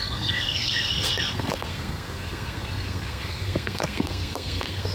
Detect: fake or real fake